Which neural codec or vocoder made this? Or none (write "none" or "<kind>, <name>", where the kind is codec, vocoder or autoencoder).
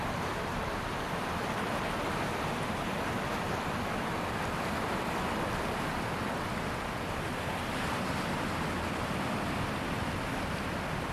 none